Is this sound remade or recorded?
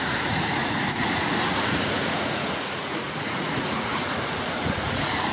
remade